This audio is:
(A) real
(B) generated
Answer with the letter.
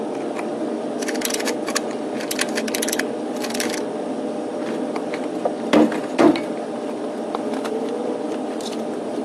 A